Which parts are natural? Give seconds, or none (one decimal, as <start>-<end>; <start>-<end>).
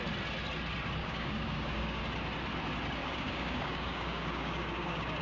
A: 0.0-1.0; 2.0-3.0